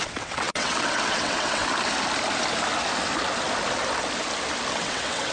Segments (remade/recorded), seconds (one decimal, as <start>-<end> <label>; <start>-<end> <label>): 0.0-1.6 remade; 1.6-4.7 recorded; 4.7-5.3 remade